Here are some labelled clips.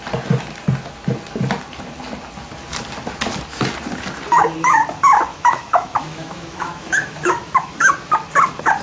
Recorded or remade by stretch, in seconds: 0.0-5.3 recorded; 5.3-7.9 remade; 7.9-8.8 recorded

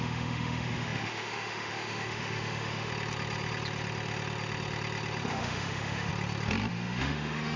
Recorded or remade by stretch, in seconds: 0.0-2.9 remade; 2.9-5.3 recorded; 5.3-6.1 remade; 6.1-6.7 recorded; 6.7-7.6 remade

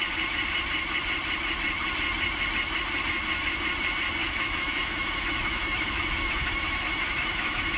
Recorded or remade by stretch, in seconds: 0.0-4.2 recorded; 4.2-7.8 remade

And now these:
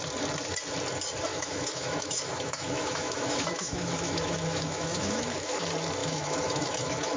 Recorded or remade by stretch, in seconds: 0.0-1.3 recorded; 1.3-5.6 remade; 5.6-6.0 recorded; 6.0-7.2 remade

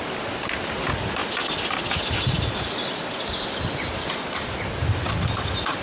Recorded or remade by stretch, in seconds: 0.0-5.8 recorded